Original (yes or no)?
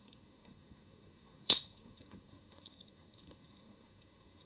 no